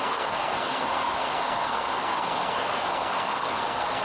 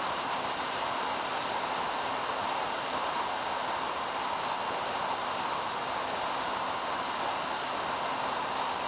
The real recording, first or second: second